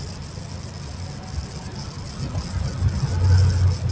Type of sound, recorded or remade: recorded